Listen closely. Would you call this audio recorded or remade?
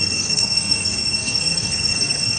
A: remade